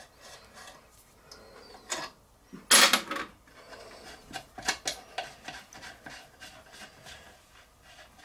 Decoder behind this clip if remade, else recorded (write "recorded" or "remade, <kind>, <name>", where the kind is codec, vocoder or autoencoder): recorded